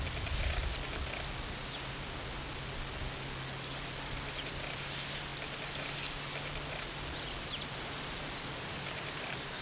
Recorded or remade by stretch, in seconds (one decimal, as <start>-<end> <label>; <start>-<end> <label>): 0.0-1.6 remade; 1.6-3.7 recorded; 3.7-9.6 remade